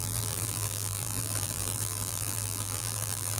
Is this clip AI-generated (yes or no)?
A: yes